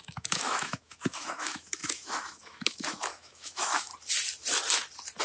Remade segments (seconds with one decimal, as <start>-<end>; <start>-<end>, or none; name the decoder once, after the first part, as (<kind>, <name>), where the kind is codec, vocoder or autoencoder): 0.0-3.9 (autoencoder, DAC-VAE)